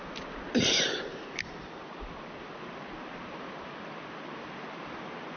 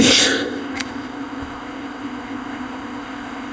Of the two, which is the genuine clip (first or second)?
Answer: first